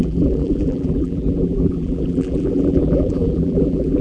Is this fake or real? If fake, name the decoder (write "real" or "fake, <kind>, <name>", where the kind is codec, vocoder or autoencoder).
fake, vocoder, BigVGAN v2